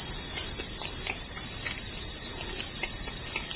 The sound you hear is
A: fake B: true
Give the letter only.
B